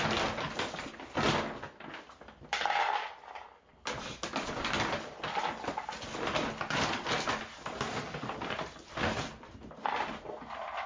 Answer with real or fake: real